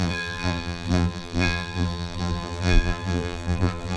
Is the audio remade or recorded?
remade